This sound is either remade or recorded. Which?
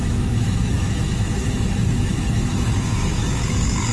remade